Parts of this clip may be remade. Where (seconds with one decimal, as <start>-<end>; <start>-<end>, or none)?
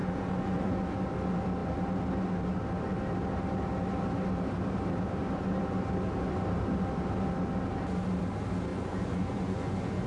0.0-0.9; 8.7-10.1